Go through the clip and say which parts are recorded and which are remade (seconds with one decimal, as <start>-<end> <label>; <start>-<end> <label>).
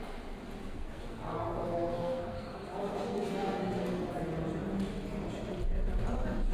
0.0-0.6 recorded; 0.6-3.9 remade; 3.9-6.5 recorded